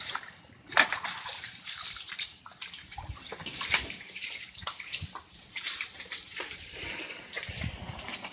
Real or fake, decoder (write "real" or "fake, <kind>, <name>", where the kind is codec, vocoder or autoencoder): fake, vocoder, BigVGAN v2